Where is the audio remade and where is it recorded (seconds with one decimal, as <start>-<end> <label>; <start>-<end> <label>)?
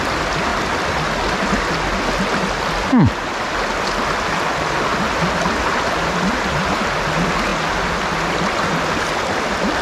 0.0-9.8 recorded